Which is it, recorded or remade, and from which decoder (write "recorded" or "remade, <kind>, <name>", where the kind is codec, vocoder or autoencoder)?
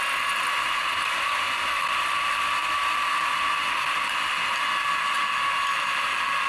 recorded